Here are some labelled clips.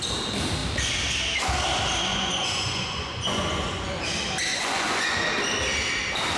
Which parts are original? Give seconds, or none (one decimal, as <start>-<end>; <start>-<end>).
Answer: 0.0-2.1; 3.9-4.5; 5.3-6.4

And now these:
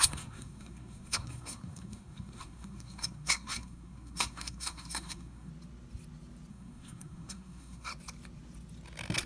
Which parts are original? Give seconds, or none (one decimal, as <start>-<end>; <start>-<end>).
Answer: 5.5-6.5; 7.9-9.3

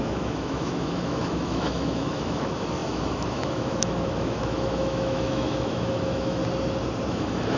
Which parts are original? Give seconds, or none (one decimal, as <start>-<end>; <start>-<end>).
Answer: 6.4-7.1

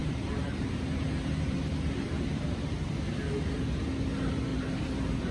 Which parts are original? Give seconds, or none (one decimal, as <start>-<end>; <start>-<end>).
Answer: 2.9-4.5

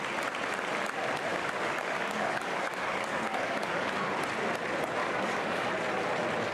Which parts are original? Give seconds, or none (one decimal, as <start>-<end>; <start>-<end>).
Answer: 0.0-1.3; 3.9-5.0; 5.7-6.5